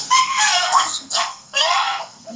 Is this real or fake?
fake